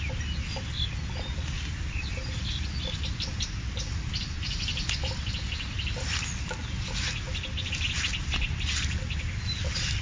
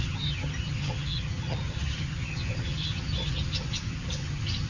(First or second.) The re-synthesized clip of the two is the second